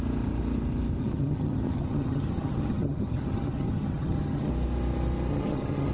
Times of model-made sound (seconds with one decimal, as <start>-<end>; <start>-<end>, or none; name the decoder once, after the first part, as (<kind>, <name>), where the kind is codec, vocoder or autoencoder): 1.0-4.5 (vocoder, HiFi-GAN); 5.3-5.9